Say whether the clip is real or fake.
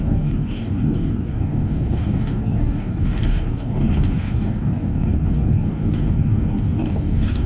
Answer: fake